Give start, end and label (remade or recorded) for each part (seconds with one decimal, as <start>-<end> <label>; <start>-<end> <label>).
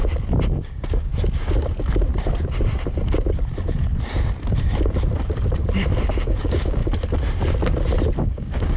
0.0-0.6 recorded; 0.6-1.1 remade; 1.1-6.1 recorded; 6.1-6.8 remade; 6.8-8.2 recorded; 8.2-8.8 remade